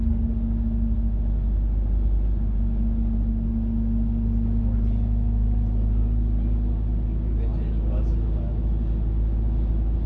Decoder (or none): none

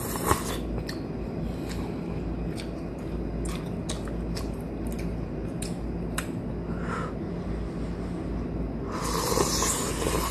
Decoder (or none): none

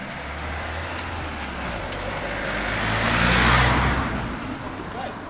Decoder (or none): none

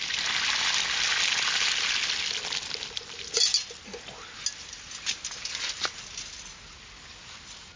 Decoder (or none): none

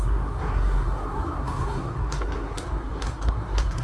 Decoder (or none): codec, SNAC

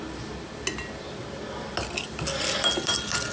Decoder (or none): none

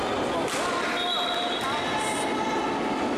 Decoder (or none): none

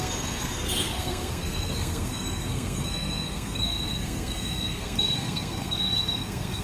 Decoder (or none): codec, SNAC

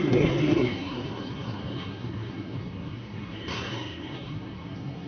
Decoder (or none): codec, SNAC